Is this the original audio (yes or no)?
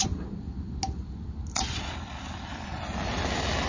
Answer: yes